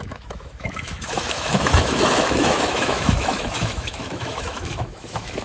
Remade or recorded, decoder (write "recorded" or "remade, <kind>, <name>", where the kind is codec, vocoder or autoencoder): remade, autoencoder, DAC-VAE